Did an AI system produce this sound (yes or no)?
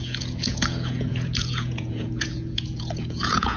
yes